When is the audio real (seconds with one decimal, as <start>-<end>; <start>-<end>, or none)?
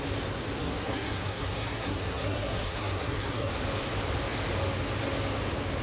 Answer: 0.0-0.6; 3.5-5.8